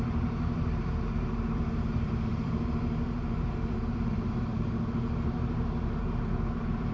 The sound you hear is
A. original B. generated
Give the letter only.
B